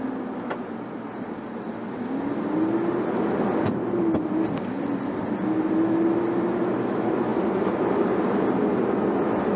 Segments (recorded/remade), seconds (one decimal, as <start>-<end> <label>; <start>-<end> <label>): 0.0-9.6 recorded